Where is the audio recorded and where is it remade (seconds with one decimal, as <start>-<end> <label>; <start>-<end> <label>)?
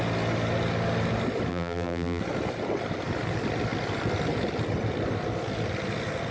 0.0-1.5 recorded; 1.5-2.2 remade; 2.2-6.3 recorded